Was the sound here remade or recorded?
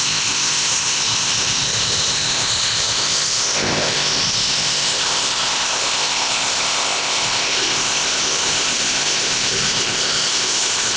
remade